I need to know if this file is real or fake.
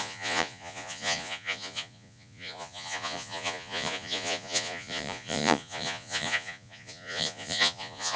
fake